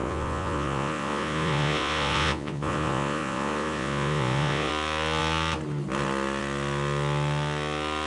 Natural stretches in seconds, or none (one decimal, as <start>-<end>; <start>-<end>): 4.7-8.1